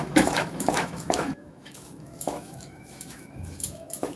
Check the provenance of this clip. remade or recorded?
remade